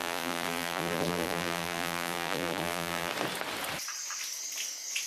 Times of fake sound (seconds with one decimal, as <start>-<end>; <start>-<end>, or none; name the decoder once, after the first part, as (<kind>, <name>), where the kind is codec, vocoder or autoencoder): 0.0-3.1 (vocoder, BigVGAN v2)